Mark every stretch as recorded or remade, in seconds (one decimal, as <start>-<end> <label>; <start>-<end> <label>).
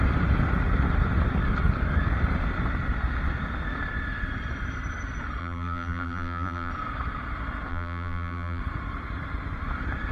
0.0-5.4 recorded; 5.4-6.7 remade; 6.7-7.7 recorded; 7.7-8.6 remade; 8.6-10.1 recorded